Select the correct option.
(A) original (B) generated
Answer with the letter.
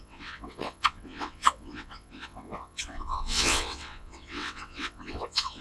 B